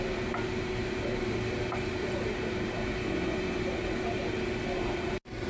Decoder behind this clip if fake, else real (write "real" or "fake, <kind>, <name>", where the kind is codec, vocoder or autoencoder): real